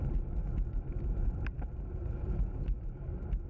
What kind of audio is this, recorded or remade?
recorded